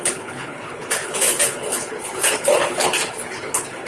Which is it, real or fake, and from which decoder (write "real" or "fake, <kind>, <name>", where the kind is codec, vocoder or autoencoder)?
fake, codec, HILCodec